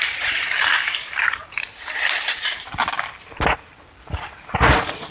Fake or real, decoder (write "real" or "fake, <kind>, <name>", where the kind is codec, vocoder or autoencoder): fake, vocoder, BigVGAN v2